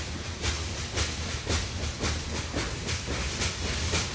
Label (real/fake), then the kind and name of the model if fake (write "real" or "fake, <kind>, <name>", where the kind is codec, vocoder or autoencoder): real